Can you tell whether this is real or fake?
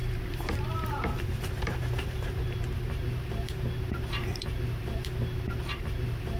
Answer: fake